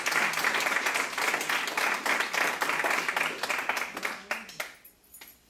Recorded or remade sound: recorded